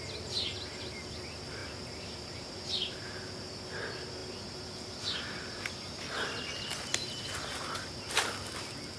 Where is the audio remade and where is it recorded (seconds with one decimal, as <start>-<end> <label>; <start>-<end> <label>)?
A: 0.0-9.0 recorded